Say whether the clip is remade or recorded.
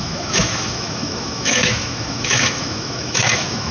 remade